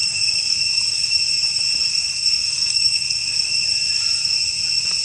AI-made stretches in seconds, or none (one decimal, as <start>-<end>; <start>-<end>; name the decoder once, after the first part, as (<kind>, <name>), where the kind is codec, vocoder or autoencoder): 0.0-0.6 (codec, SNAC); 1.9-3.5